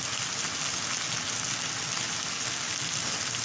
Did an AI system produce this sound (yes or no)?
no